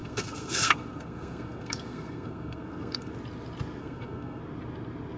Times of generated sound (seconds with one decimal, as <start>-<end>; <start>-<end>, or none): 0.0-3.1; 3.8-4.4